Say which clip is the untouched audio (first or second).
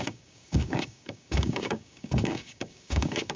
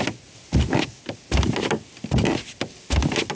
second